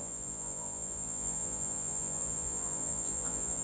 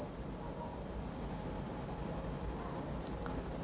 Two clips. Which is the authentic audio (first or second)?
second